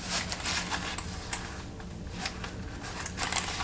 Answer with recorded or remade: recorded